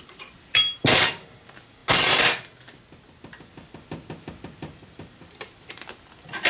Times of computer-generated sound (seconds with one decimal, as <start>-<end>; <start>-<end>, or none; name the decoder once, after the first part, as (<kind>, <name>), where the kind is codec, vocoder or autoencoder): none